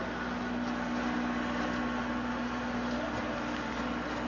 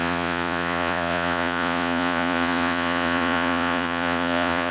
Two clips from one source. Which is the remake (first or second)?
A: second